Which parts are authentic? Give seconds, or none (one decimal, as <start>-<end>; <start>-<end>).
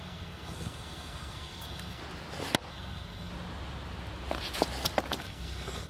2.0-2.7; 3.3-5.2